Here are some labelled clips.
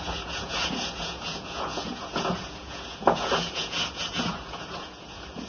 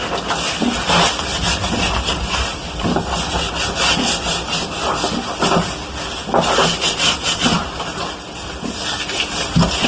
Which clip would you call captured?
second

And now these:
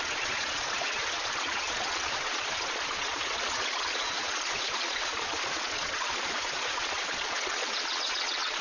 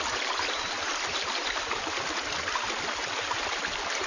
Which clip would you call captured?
second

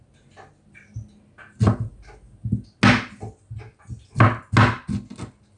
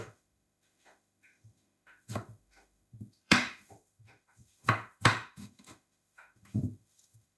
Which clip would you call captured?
first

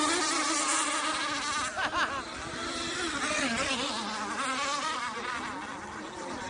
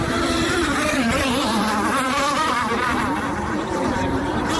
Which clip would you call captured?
first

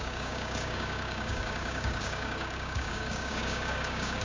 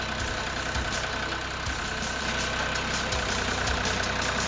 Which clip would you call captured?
second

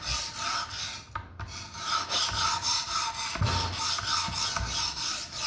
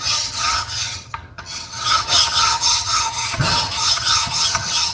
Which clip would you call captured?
first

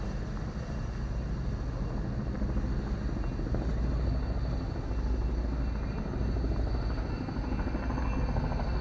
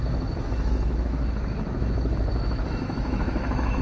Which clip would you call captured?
first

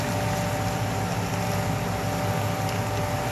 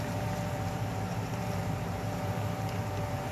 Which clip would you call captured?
first